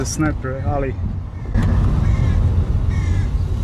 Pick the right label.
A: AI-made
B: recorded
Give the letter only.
B